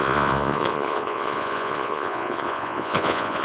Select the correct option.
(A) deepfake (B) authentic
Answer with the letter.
A